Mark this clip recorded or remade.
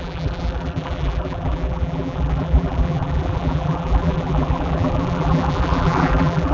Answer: remade